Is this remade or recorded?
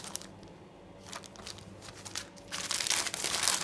recorded